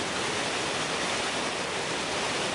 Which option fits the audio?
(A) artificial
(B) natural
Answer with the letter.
B